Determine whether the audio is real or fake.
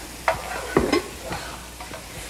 real